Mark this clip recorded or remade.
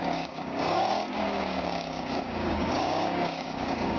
remade